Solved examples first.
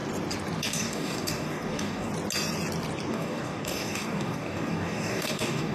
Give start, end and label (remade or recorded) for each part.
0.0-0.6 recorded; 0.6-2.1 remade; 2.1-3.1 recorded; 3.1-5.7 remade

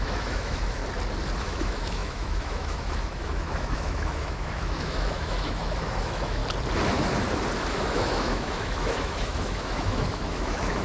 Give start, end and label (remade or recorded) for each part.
0.0-0.8 remade; 0.8-1.4 recorded; 1.4-6.4 remade; 6.4-7.7 recorded; 7.7-10.8 remade

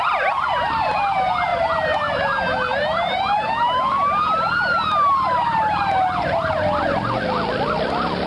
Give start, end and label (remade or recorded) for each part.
0.0-8.3 recorded

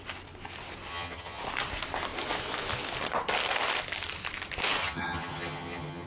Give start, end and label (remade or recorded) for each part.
0.0-0.9 recorded; 0.9-1.4 remade; 1.4-4.8 recorded; 4.8-6.1 remade